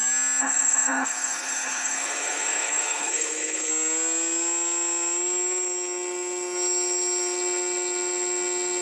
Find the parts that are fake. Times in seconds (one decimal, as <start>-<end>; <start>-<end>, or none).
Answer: 0.4-3.7